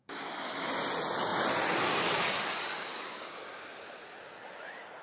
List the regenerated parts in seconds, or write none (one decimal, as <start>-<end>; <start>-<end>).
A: 0.0-0.7